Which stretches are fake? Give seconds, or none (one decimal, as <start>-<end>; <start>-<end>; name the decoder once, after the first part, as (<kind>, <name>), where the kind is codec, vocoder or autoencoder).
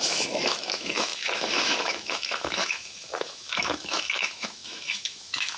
0.0-5.6 (autoencoder, DAC-VAE)